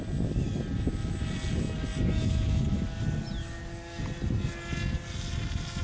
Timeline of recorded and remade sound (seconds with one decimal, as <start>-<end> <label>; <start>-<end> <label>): 0.0-3.4 recorded; 3.4-4.0 remade; 4.0-5.8 recorded